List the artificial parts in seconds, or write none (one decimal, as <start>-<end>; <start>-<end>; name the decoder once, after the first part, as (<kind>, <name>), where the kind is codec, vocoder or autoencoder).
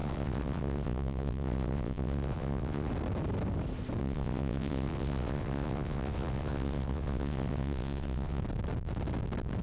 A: 0.0-2.9 (vocoder, WaveNeXt); 4.0-8.4